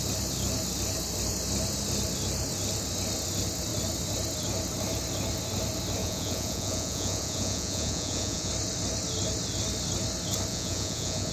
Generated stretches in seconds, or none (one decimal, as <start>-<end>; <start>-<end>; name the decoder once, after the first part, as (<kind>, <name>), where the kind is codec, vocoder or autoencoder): 6.0-8.5 (vocoder, Vocos); 10.5-11.3